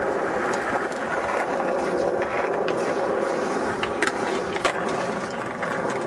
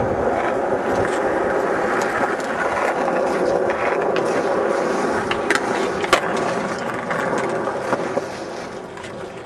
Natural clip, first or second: second